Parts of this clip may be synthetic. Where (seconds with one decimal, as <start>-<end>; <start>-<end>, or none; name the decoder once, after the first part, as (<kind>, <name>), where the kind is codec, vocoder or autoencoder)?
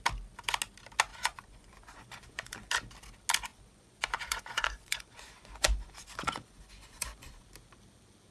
1.1-2.7 (vocoder, Vocos); 3.5-7.4